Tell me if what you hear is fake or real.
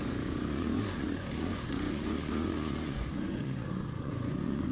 fake